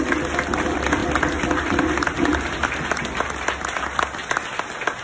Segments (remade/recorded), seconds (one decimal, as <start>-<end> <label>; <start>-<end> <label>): 0.0-1.0 recorded; 1.0-3.8 remade; 3.8-5.0 recorded